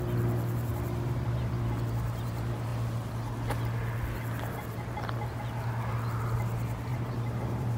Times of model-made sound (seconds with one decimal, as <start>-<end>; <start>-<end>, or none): 0.7-1.6; 6.9-7.8